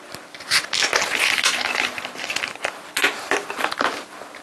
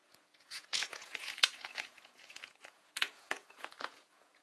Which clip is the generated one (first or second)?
second